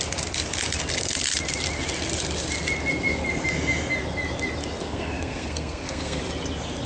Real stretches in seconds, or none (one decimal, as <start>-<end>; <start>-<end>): 0.0-4.8; 6.2-6.9